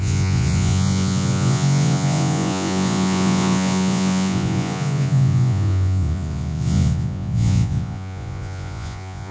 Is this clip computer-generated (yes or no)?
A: yes